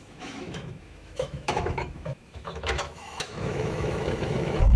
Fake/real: fake